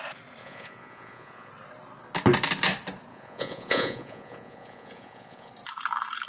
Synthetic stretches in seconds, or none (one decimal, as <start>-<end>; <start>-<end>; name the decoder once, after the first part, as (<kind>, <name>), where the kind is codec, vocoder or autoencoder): 0.4-1.5 (vocoder, Vocos); 3.1-5.5